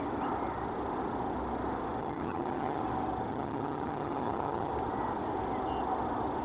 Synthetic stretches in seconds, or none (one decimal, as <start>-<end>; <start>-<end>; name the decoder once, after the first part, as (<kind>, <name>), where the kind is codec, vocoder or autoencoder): 2.0-2.8 (vocoder, HiFi-GAN); 3.3-4.7